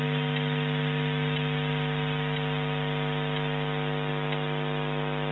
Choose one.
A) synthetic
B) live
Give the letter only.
B